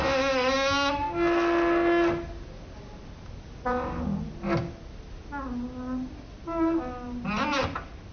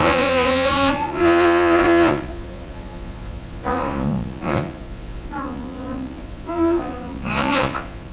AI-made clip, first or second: second